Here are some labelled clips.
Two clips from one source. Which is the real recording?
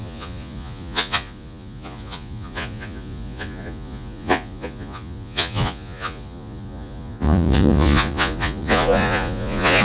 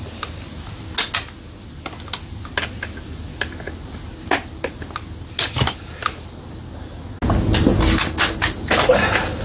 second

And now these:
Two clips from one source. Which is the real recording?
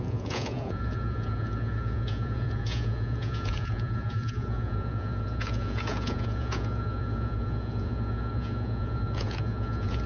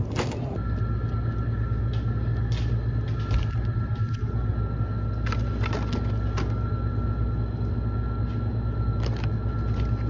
second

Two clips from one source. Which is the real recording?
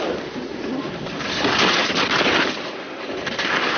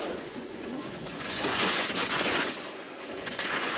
first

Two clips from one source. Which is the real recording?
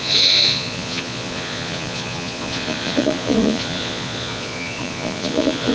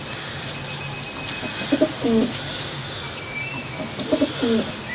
second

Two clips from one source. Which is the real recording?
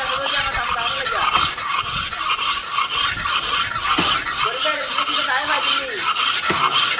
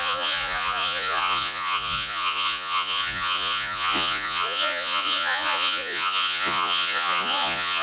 first